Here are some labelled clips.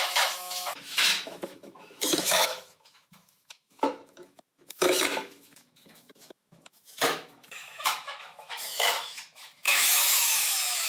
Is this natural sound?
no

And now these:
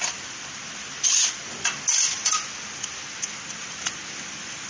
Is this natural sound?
yes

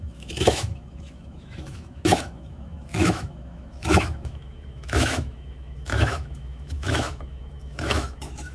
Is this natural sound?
no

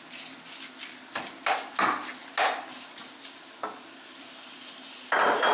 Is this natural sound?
yes